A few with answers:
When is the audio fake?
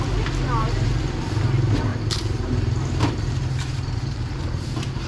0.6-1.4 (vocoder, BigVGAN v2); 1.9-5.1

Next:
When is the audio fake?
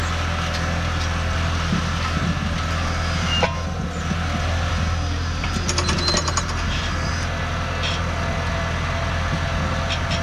none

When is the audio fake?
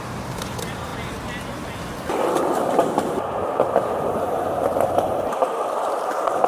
0.0-0.9 (vocoder, BigVGAN v2); 2.4-6.5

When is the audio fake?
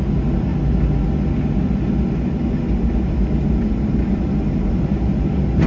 0.0-0.5 (vocoder, BigVGAN v2); 3.9-5.7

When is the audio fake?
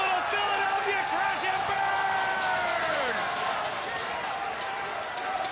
2.8-4.1 (vocoder, BigVGAN v2)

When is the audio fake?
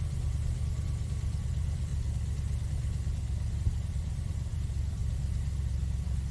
0.0-1.9 (vocoder, BigVGAN v2); 3.5-5.0